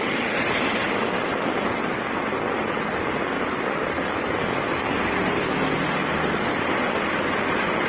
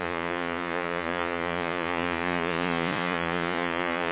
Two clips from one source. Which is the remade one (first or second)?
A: second